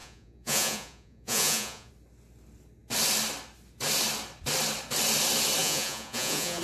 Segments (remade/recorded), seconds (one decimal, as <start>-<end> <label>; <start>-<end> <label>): 0.0-1.9 remade; 1.9-5.6 recorded; 5.6-6.6 remade